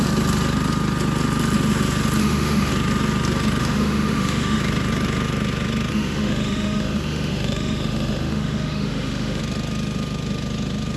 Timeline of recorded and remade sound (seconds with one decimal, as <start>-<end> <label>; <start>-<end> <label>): 0.0-2.2 recorded; 2.2-2.7 remade; 2.7-3.6 recorded; 3.6-4.6 remade; 4.6-5.9 recorded; 5.9-9.4 remade; 9.4-11.0 recorded